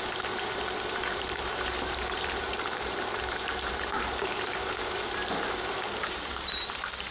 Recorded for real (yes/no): no